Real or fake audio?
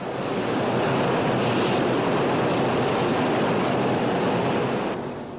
real